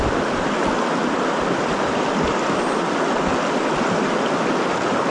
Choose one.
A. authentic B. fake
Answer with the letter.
A